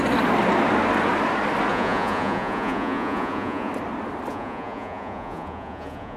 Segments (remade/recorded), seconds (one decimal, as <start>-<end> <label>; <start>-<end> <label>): 0.0-1.7 recorded; 1.7-3.7 remade; 3.7-4.3 recorded; 4.3-6.2 remade

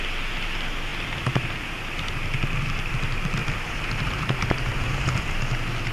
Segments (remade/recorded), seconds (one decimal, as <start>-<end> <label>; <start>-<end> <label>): 0.0-3.4 recorded; 3.4-5.4 remade; 5.4-5.9 recorded

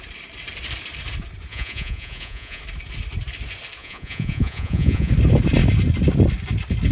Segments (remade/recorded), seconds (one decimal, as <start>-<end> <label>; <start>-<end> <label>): 0.0-1.5 recorded; 1.5-2.6 remade; 2.6-3.8 recorded; 3.8-5.1 remade; 5.1-6.9 recorded

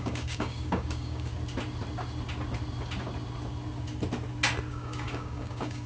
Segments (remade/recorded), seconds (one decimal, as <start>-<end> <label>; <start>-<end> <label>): 0.0-1.3 remade; 1.3-4.7 recorded; 4.7-5.9 remade

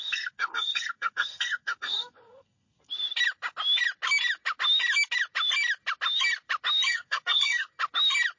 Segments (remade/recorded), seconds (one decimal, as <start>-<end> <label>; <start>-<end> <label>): 0.0-2.9 remade; 2.9-6.9 recorded; 6.9-7.7 remade; 7.7-8.4 recorded

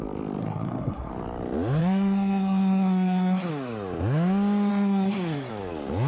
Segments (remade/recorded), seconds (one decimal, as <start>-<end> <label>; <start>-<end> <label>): 0.0-0.4 recorded; 0.4-1.1 remade; 1.1-1.8 recorded; 1.8-3.5 remade; 3.5-4.7 recorded; 4.7-5.5 remade; 5.5-6.1 recorded

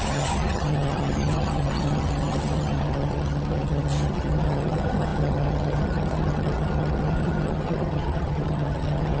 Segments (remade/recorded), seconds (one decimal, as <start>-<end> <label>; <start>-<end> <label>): 0.0-9.2 remade

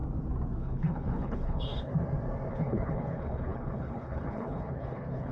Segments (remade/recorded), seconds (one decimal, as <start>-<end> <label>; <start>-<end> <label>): 0.0-0.6 recorded; 0.6-1.9 remade; 1.9-2.5 recorded; 2.5-5.3 remade